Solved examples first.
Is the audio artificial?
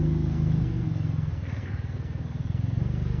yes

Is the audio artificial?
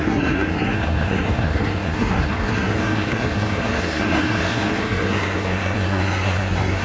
yes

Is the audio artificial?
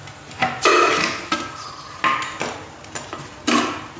no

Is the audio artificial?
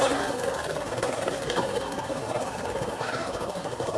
yes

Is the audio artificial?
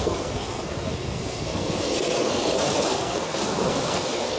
yes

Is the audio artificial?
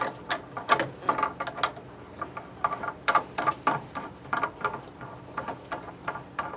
no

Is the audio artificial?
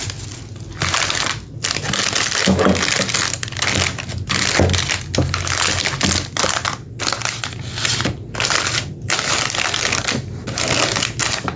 no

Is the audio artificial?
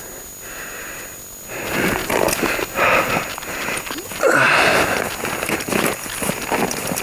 no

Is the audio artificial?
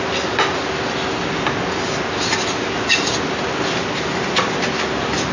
no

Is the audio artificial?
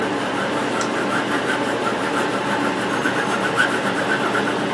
no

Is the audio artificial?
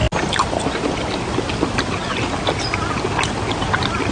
no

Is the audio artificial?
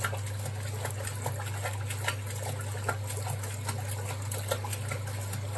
no